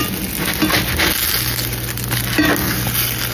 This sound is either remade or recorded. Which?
recorded